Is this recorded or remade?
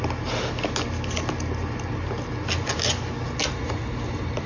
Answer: recorded